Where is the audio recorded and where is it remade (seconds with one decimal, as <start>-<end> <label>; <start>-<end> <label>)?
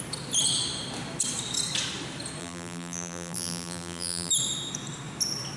0.0-2.4 recorded; 2.4-4.3 remade; 4.3-5.6 recorded